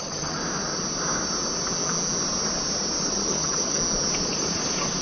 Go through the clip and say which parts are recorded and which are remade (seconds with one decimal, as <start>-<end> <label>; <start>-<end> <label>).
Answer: 0.0-0.4 remade; 0.4-3.1 recorded; 3.1-3.8 remade; 3.8-5.0 recorded